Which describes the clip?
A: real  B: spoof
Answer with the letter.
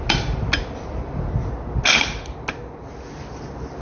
A